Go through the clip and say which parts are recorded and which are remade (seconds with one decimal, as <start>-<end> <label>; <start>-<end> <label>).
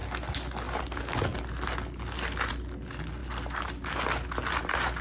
0.0-5.0 recorded